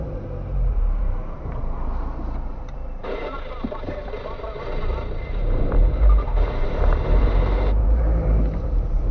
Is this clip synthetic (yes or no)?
yes